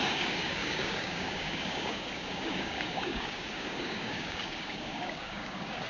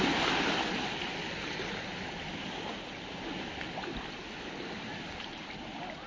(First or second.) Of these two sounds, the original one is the second